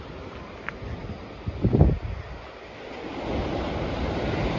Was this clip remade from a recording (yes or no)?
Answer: no